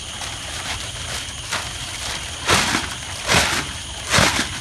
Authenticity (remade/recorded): recorded